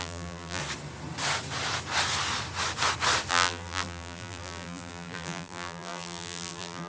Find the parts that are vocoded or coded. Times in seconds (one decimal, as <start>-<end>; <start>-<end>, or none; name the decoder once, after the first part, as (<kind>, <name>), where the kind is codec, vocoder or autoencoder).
0.0-0.6 (vocoder, BigVGAN v2); 3.3-6.9

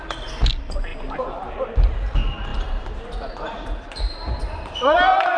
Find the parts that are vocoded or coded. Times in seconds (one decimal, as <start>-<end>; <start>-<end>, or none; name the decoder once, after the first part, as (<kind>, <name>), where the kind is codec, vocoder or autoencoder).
0.9-1.5 (vocoder, BigVGAN v2); 2.5-5.4

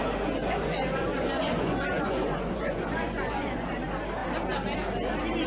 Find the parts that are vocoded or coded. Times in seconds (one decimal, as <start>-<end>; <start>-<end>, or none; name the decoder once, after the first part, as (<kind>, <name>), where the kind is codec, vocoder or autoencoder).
0.4-3.7 (vocoder, Vocos)

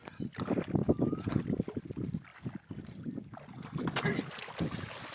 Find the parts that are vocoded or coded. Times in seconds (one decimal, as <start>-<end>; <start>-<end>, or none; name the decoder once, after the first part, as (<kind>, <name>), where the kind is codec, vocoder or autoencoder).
0.8-1.4 (codec, DAC)

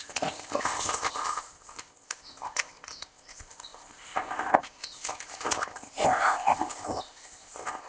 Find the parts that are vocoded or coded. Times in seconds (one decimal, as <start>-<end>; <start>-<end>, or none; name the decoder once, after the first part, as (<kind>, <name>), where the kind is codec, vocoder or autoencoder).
0.0-7.9 (codec, ZipCodec)